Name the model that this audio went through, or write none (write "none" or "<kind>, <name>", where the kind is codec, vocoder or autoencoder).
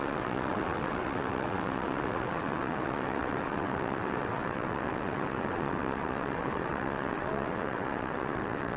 vocoder, WaveNeXt